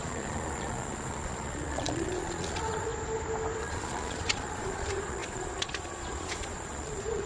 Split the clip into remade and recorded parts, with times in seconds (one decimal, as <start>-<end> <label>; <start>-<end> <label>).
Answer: 0.0-2.9 remade; 2.9-3.6 recorded; 3.6-7.3 remade